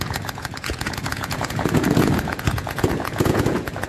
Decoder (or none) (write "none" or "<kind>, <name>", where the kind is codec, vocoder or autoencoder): vocoder, Vocos